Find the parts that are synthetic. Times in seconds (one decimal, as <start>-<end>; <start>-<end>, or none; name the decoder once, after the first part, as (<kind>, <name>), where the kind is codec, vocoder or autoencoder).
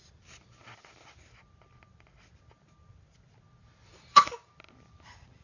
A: 3.9-4.5 (vocoder, BigVGAN v2)